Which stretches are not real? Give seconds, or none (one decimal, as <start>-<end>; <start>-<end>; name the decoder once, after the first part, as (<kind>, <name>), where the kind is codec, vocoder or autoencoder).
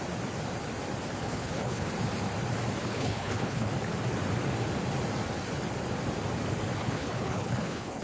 1.2-1.9 (codec, HILCodec); 2.8-3.7; 6.8-8.0